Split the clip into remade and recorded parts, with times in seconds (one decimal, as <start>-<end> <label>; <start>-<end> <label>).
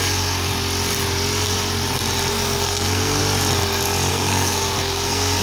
0.0-0.5 remade; 0.5-2.3 recorded; 2.3-3.2 remade; 3.2-4.1 recorded; 4.1-5.4 remade